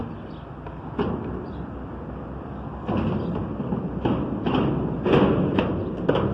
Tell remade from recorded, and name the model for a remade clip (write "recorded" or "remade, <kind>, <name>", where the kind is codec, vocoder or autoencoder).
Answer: recorded